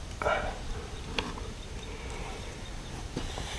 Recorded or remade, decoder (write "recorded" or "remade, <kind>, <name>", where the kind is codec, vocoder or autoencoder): recorded